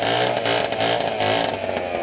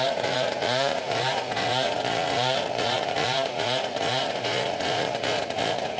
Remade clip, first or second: second